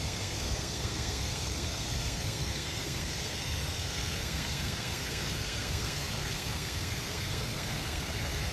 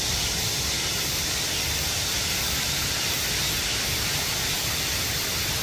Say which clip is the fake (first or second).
first